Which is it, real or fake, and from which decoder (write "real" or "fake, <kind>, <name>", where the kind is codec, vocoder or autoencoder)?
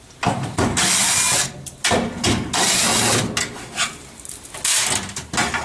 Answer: real